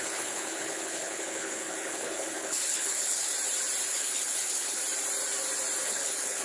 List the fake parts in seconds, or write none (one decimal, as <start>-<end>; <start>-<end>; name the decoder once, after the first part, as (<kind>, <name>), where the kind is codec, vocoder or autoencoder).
0.0-3.3 (codec, HILCodec); 3.9-4.8; 5.8-6.4